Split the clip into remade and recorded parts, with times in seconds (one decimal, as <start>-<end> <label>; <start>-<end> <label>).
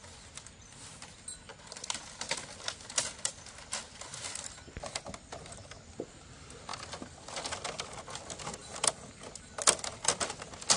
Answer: 0.0-10.8 recorded